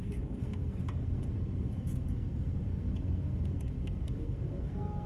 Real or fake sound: fake